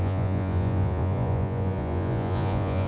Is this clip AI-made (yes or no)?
yes